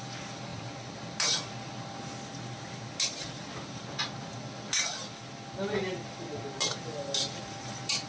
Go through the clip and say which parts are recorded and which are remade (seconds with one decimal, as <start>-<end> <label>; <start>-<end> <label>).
0.0-8.1 recorded